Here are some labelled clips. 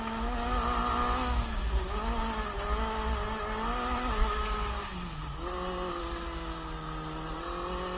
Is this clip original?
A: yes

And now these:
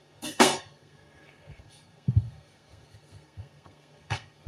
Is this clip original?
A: no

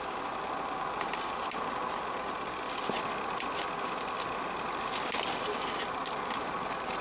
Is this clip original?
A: yes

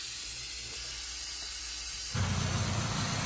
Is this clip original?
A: yes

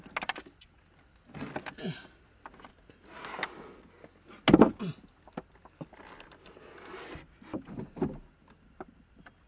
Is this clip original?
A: yes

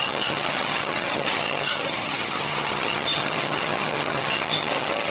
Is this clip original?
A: no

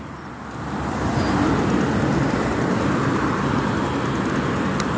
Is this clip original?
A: yes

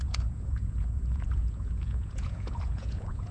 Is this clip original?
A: no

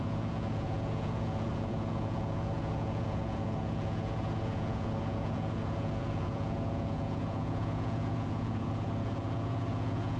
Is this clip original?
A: no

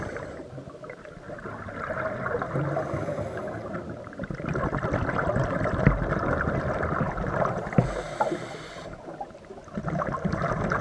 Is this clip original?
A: yes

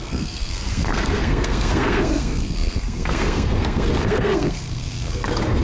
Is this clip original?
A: no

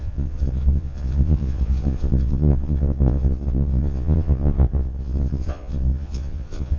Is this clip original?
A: no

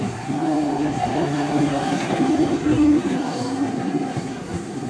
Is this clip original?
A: no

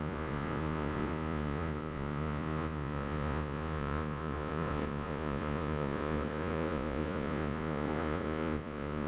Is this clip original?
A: no